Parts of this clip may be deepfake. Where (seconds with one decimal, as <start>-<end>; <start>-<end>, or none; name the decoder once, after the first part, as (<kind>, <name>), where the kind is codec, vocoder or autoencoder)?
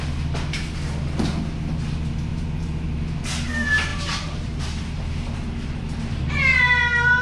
2.3-3.0 (vocoder, BigVGAN v2); 3.9-6.3